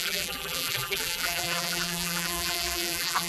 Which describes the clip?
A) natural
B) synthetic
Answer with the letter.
B